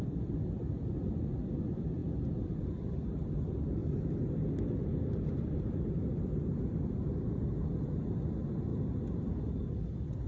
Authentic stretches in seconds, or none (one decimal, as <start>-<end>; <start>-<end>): 8.7-9.4